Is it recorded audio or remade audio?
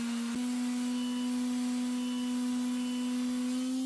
recorded